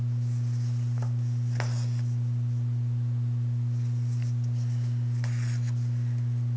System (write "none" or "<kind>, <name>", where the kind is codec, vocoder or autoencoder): none